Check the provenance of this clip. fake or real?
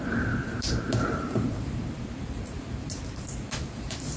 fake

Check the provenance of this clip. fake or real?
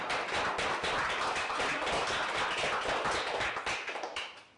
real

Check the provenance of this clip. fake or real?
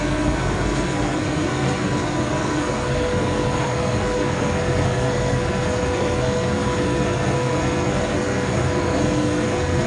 fake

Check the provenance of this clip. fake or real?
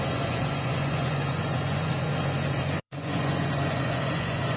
fake